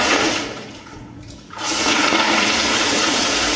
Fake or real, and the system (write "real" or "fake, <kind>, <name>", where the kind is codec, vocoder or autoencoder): fake, vocoder, Vocos